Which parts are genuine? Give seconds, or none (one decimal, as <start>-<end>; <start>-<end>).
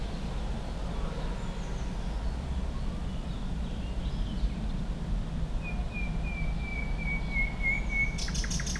0.0-8.8